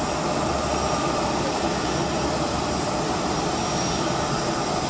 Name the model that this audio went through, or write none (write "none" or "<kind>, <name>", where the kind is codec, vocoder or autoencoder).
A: none